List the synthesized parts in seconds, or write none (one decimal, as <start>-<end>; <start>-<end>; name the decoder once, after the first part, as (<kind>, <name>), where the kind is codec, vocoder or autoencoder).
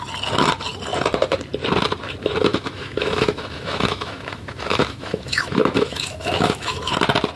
2.5-6.9 (autoencoder, DAC-VAE)